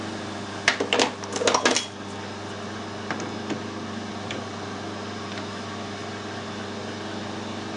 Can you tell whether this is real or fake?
real